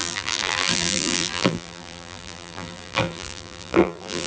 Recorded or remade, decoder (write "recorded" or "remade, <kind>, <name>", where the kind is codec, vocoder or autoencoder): remade, vocoder, BigVGAN v2